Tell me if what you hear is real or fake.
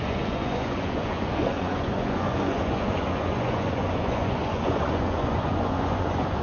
fake